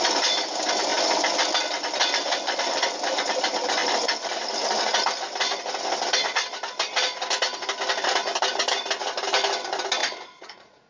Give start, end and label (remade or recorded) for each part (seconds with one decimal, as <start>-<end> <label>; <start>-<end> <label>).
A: 0.0-10.0 recorded; 10.0-10.9 remade